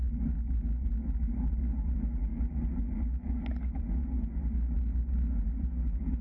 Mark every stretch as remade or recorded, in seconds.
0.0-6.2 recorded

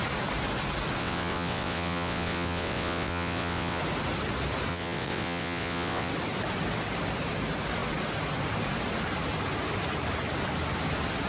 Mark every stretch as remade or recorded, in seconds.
0.0-1.0 recorded; 1.0-3.8 remade; 3.8-4.7 recorded; 4.7-6.1 remade; 6.1-11.3 recorded

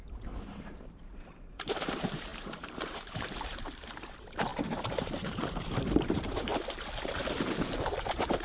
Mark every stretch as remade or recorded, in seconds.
0.0-6.5 remade; 6.5-7.8 recorded; 7.8-8.4 remade

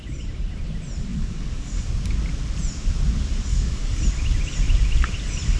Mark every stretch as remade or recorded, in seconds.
0.0-1.1 recorded; 1.1-1.9 remade; 1.9-3.5 recorded; 3.5-4.0 remade; 4.0-5.6 recorded

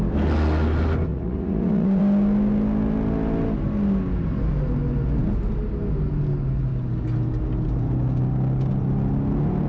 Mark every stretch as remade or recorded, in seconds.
0.0-1.1 recorded; 1.1-2.0 remade; 2.0-9.7 recorded

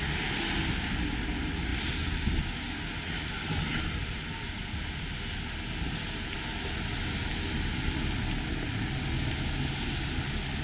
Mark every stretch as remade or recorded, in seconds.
0.0-1.7 recorded; 1.7-2.4 remade; 2.4-10.6 recorded

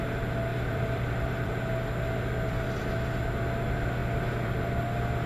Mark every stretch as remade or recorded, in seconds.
0.0-0.5 recorded; 0.5-1.5 remade; 1.5-5.3 recorded